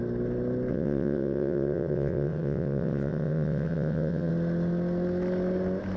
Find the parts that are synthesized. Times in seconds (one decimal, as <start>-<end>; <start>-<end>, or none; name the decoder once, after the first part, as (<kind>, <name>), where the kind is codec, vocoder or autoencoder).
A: 0.7-4.3 (vocoder, WaveNeXt)